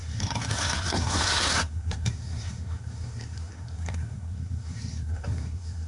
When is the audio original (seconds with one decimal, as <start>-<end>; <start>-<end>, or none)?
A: none